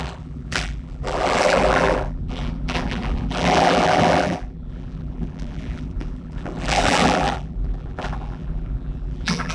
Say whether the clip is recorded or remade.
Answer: remade